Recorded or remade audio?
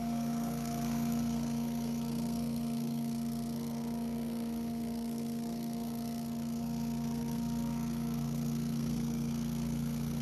remade